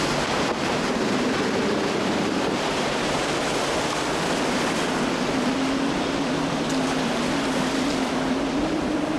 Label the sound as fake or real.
real